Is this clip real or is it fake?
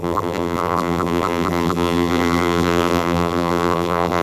fake